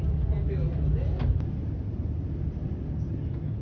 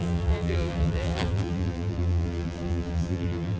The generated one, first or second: second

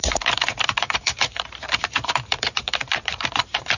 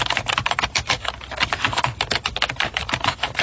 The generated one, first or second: first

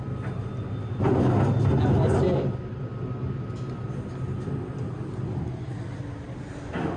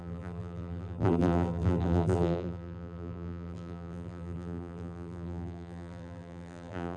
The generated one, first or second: second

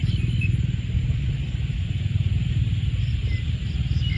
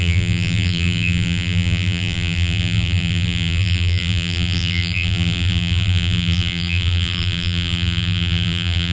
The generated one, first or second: second